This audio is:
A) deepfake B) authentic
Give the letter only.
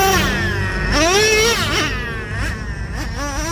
B